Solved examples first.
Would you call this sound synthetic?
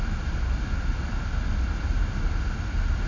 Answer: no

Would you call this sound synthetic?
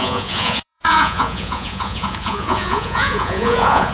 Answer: yes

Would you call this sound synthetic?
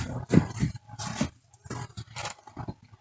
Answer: no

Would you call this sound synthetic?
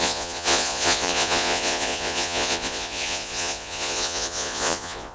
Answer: yes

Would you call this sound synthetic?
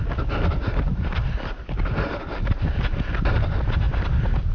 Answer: no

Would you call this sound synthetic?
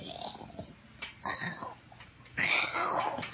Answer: no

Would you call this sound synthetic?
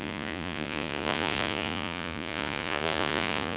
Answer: yes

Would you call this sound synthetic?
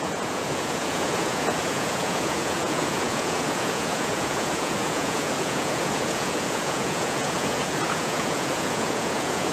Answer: yes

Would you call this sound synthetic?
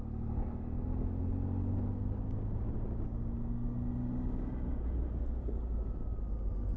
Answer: no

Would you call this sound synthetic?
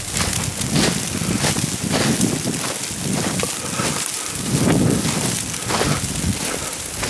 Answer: no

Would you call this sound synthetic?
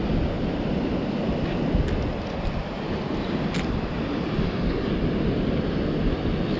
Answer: no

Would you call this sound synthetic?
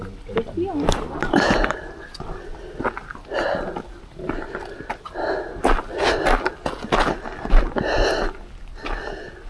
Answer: no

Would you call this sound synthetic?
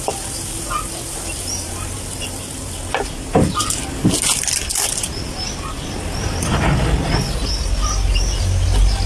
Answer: no